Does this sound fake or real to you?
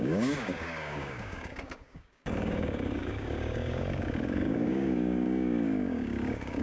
fake